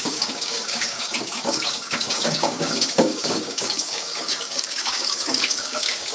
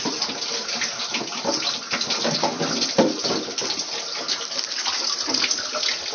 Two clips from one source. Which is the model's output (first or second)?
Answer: first